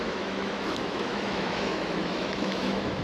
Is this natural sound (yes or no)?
no